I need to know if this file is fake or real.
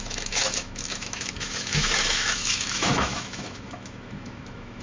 fake